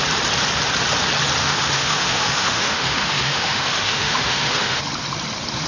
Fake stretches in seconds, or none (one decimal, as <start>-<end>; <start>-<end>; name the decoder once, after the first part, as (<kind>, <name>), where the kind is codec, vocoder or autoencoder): 1.4-4.8 (autoencoder, DAC-VAE)